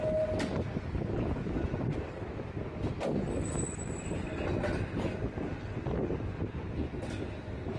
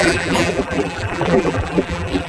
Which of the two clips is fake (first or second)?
second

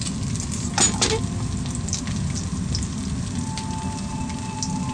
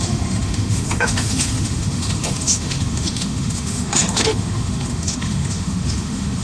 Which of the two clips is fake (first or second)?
second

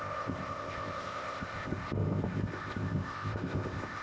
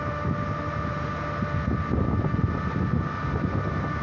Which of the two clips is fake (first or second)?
first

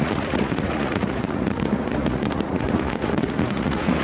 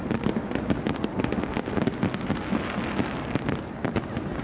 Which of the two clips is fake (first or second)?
first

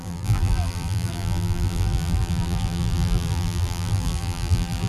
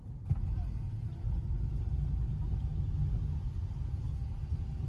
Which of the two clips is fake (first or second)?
first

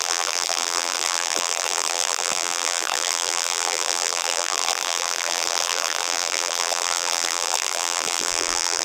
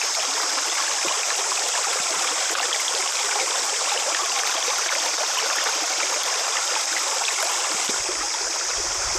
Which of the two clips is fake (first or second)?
first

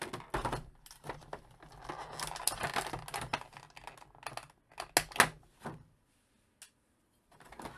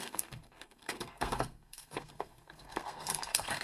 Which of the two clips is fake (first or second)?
second